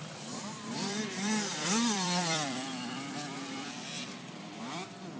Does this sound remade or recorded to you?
remade